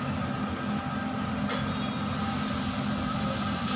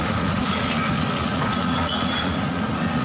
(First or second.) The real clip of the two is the first